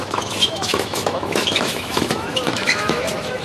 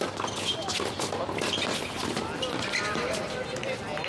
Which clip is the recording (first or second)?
second